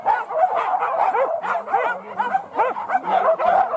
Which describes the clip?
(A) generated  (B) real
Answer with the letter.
B